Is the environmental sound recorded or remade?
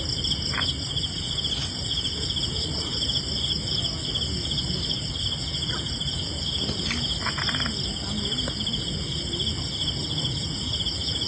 recorded